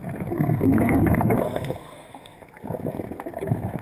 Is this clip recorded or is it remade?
remade